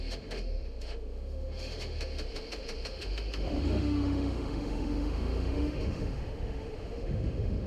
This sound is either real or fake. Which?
fake